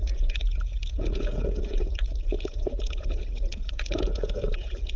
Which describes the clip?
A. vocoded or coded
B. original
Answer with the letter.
A